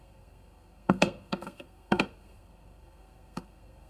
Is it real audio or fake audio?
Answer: fake